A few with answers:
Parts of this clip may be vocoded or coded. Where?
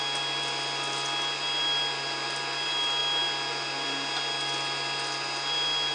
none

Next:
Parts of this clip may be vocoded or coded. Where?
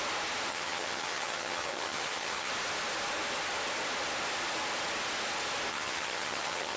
0.5-2.5 (vocoder, HiFi-GAN); 5.7-6.8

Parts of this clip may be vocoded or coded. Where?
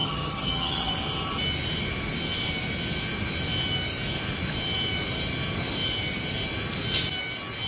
0.0-0.9 (vocoder, HiFi-GAN)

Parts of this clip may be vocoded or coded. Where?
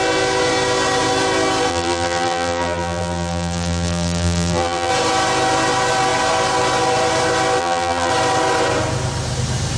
1.7-4.9 (vocoder, BigVGAN v2); 7.6-8.1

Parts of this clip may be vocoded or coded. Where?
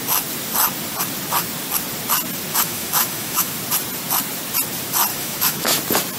2.5-3.5 (autoencoder, DAC-VAE); 5.1-5.8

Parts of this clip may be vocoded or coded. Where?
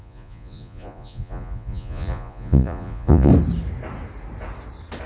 0.0-3.3 (vocoder, Vocos)